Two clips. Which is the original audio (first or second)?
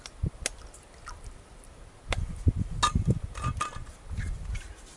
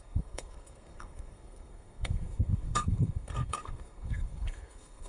first